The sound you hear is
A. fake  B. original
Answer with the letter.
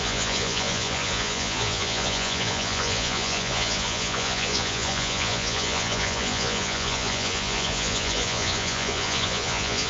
A